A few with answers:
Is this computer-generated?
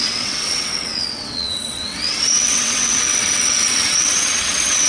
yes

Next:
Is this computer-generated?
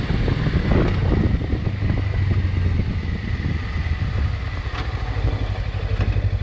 no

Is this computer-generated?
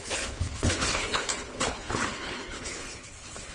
yes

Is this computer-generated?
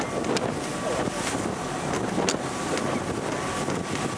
no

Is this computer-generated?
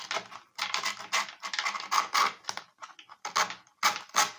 no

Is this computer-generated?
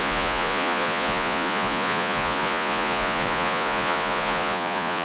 yes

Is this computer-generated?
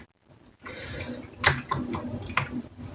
no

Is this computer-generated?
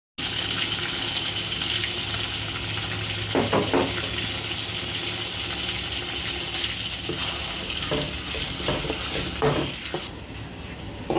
no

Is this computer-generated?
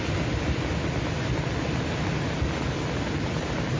no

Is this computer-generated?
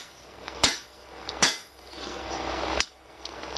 yes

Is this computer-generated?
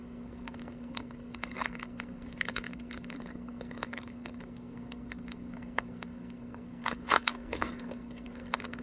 yes